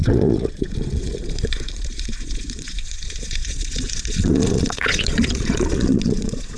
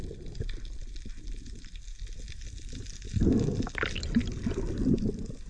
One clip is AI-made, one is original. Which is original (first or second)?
second